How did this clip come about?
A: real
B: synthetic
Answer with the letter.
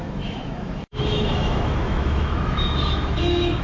B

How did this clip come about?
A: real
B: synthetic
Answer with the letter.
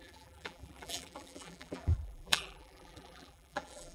B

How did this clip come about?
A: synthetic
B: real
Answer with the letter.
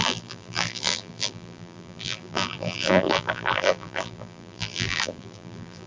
A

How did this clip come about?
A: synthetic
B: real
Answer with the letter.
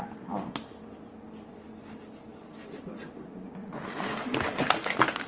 B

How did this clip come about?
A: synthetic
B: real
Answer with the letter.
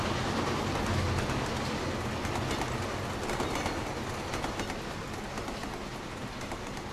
B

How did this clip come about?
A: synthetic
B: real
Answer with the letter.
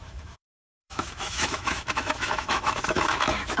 A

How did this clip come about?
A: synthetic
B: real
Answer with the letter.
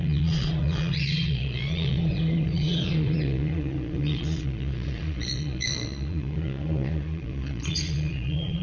A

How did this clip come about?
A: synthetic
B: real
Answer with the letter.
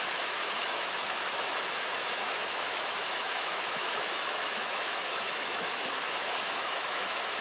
A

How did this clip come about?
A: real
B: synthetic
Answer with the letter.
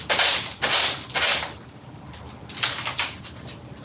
A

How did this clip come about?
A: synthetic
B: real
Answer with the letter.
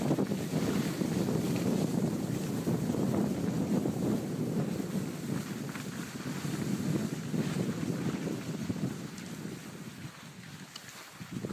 B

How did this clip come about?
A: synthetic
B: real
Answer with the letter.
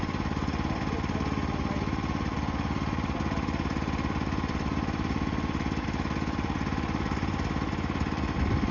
B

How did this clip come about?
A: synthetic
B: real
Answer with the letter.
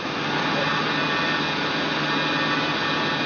B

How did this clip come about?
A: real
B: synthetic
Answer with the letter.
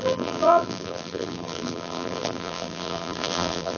B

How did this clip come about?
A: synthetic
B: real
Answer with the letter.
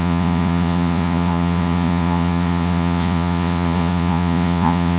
A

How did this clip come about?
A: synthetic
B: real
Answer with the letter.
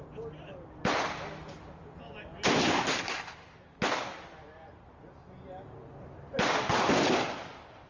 B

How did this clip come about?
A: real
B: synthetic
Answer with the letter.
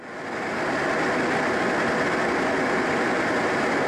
A